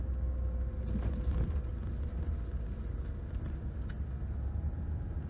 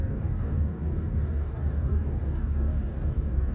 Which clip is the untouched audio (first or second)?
first